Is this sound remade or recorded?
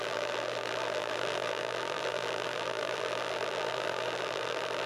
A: remade